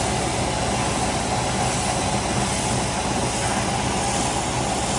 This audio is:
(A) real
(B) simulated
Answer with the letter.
A